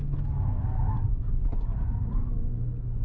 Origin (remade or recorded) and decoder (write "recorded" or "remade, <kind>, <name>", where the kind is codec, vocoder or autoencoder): recorded